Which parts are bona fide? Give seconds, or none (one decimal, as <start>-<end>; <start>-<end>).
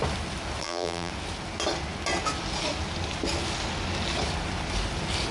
0.0-0.6; 1.1-5.3